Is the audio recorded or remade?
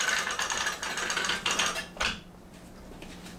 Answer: recorded